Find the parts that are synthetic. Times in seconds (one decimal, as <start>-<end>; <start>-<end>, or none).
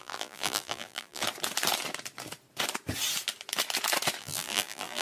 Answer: 0.0-1.2; 4.2-5.0